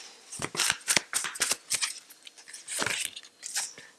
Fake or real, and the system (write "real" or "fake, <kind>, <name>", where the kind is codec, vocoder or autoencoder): real